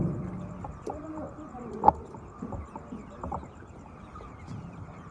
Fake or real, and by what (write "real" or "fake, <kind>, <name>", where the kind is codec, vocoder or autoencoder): fake, vocoder, BigVGAN v2